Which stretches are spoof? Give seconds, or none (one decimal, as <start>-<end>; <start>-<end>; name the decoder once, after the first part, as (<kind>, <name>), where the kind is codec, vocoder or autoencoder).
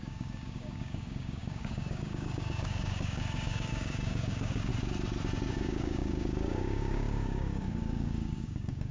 0.0-4.7 (codec, DAC); 5.5-8.9